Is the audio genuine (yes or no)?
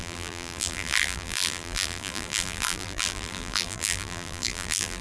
no